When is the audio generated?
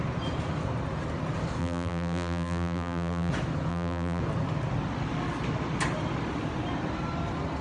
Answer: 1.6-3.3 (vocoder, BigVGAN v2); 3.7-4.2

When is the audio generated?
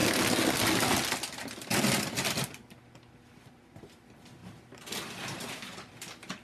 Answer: none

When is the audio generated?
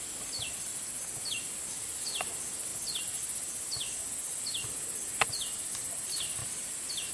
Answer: 0.7-1.3 (vocoder, BigVGAN v2); 6.4-7.1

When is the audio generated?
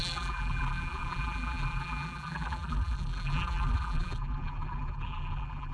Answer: 0.0-5.7 (vocoder, BigVGAN v2)